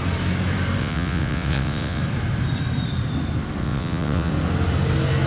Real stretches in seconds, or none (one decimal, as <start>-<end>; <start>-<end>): 0.0-0.8; 2.0-3.6; 4.3-5.3